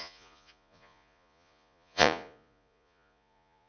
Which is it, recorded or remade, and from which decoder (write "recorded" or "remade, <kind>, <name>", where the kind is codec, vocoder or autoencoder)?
remade, vocoder, Vocos